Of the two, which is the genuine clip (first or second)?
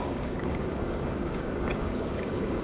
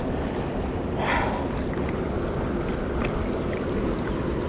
second